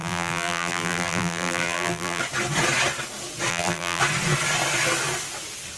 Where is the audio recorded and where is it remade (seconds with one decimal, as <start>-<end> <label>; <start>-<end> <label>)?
0.0-2.2 remade; 2.2-3.5 recorded; 3.5-4.0 remade; 4.0-5.8 recorded